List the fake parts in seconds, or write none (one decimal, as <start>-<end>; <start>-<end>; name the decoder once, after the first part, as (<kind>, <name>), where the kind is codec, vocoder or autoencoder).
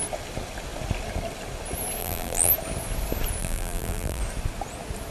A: 2.0-2.5 (vocoder, BigVGAN v2); 3.4-4.2